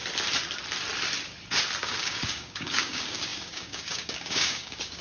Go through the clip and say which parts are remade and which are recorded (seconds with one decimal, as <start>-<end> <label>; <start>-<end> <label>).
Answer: 0.0-1.8 recorded; 1.8-5.0 remade